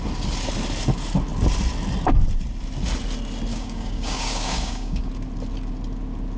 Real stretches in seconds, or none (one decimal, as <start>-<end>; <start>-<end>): 0.0-3.5; 5.1-6.4